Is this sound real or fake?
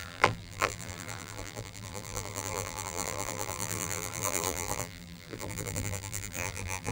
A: fake